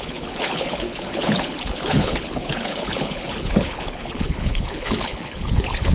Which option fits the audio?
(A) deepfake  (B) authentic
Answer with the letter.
A